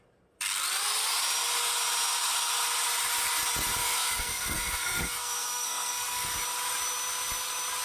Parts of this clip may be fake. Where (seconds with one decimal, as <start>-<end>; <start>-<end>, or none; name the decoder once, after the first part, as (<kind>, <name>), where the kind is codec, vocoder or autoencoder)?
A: 3.8-6.3 (codec, SNAC)